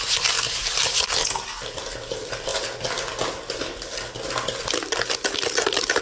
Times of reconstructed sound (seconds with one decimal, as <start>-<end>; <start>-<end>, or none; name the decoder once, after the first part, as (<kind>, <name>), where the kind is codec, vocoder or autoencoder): none